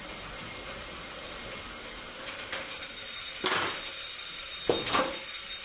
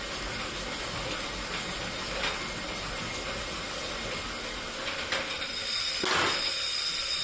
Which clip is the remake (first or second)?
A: first